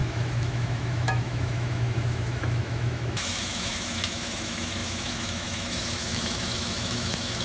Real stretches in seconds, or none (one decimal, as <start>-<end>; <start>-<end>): none